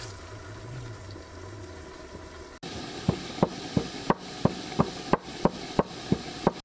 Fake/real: real